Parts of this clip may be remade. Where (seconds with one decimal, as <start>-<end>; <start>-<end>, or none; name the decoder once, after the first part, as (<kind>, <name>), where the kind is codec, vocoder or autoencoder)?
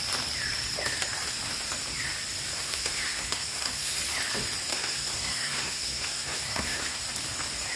2.5-4.0 (codec, SNAC); 4.7-7.0